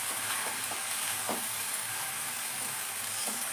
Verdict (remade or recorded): remade